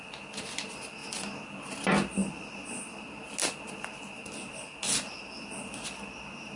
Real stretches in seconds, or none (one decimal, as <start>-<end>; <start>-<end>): 0.0-6.6